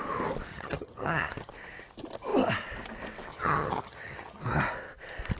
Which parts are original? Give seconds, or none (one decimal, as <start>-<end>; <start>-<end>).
0.0-0.5; 1.5-3.3; 4.4-5.4